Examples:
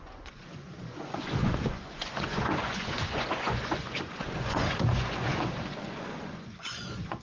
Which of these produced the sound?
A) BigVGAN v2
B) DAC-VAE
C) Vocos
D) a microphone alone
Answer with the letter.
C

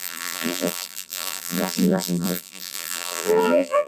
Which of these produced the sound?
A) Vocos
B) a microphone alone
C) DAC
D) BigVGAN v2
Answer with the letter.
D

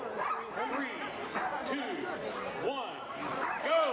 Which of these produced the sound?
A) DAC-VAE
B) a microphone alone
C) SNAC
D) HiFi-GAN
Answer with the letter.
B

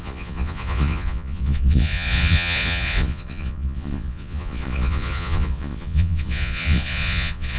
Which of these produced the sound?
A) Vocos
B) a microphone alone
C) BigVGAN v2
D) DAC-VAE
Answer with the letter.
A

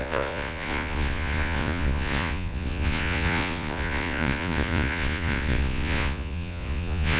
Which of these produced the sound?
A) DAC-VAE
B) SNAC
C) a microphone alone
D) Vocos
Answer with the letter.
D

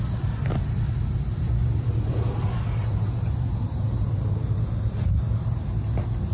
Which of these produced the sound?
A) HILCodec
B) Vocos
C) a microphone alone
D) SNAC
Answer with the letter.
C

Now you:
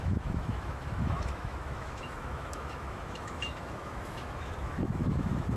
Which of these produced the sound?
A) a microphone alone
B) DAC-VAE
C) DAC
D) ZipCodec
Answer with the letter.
B